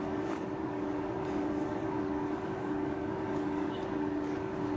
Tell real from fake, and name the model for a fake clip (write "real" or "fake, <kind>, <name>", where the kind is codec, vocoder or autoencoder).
fake, codec, DAC